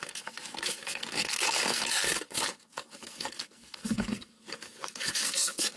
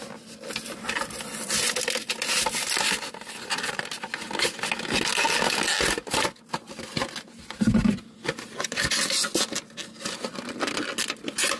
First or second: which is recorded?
second